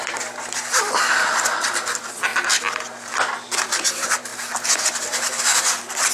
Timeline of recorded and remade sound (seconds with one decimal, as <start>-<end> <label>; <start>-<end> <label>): 0.0-4.3 remade; 4.3-5.0 recorded; 5.0-6.1 remade